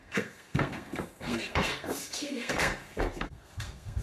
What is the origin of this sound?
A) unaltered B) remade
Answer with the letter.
B